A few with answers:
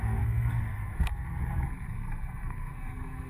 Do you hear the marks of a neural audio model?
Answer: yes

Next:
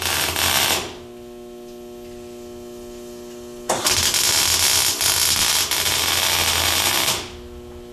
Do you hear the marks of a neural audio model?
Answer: no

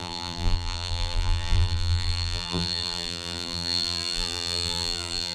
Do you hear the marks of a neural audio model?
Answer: yes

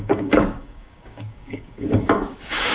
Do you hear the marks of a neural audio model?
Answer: yes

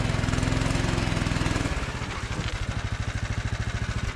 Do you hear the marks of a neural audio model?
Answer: no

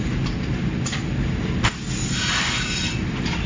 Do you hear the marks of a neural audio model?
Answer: no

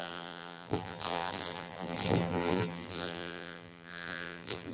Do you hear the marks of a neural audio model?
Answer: yes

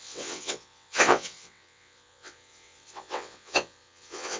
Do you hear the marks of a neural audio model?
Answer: yes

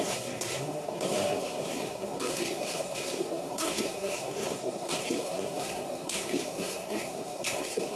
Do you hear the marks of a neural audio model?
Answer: yes